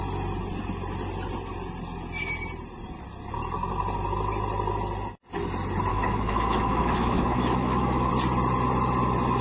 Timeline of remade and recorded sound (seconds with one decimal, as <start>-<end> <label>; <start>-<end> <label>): 0.0-5.9 recorded; 5.9-8.1 remade; 8.1-9.4 recorded